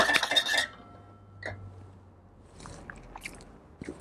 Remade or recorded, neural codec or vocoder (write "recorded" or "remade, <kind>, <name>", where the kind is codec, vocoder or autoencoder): recorded